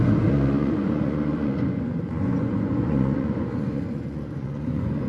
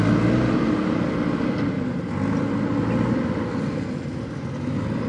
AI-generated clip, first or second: first